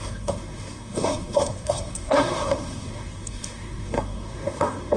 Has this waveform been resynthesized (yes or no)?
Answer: yes